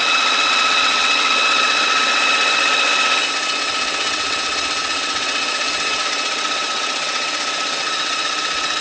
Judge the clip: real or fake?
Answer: fake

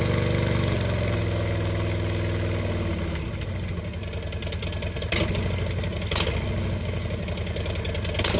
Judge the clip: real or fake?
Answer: real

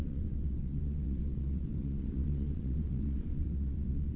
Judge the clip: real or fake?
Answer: fake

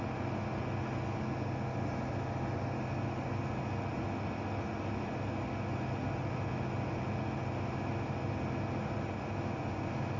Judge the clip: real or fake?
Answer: real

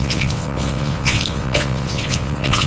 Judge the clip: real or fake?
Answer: fake